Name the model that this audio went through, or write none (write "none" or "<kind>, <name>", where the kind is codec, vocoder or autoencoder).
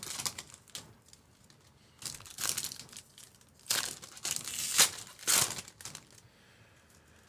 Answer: none